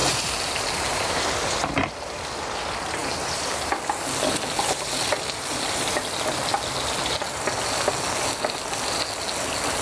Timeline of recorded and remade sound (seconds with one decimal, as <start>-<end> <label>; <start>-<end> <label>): 0.0-1.2 remade; 1.2-3.0 recorded; 3.0-3.7 remade; 3.7-9.8 recorded